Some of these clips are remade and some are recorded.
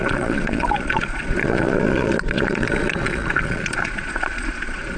remade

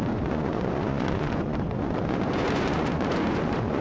remade